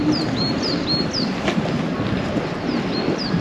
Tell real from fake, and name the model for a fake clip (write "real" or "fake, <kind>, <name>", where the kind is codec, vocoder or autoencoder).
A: real